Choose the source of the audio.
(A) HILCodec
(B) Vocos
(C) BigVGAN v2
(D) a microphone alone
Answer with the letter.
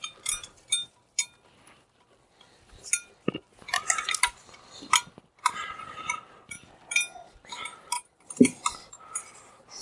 D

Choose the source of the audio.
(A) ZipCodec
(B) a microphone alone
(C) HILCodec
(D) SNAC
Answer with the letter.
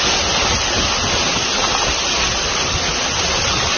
B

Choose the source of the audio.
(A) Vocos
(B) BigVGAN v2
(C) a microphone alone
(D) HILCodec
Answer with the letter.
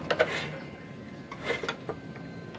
C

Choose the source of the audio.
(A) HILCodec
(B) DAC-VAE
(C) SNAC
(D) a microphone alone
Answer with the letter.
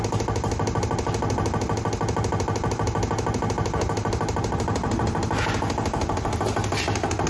D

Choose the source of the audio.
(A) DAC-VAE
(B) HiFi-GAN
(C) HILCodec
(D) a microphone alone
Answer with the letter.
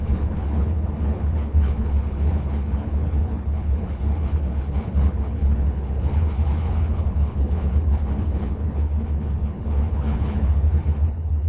C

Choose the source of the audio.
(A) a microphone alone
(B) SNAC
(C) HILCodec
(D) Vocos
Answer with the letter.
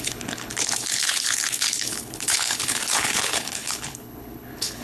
C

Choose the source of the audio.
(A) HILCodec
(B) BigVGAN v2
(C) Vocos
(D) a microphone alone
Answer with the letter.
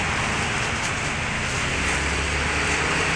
D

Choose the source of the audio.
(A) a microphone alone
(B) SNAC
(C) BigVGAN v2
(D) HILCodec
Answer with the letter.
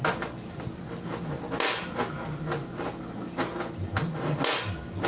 A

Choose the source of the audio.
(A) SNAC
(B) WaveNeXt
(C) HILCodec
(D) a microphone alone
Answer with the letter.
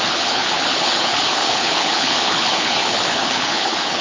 C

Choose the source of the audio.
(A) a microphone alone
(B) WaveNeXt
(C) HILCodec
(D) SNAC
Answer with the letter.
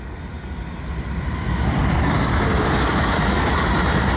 A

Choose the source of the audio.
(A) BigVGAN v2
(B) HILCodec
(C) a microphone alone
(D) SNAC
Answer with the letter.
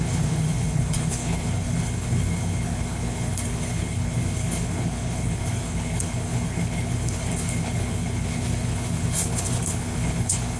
B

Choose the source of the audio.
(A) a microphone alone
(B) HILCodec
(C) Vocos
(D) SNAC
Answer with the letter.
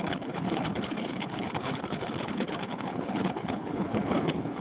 B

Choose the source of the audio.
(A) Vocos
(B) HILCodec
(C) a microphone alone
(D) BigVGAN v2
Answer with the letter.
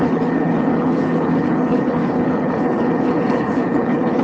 B